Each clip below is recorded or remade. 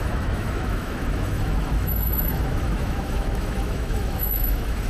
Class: remade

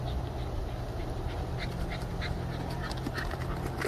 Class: recorded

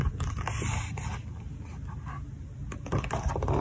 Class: recorded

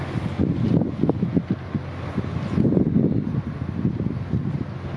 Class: recorded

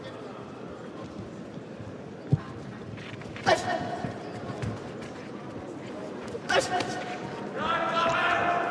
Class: recorded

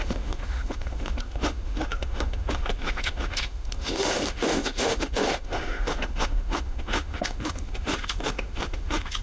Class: remade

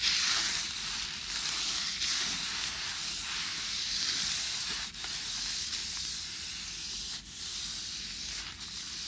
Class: recorded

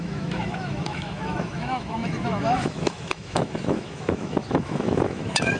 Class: remade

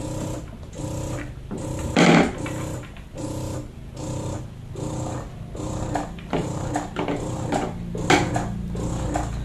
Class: recorded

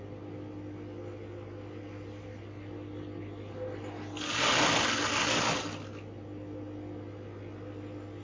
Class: recorded